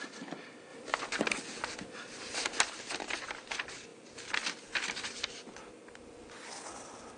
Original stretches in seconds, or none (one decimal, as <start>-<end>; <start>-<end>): 0.0-0.7; 2.6-7.2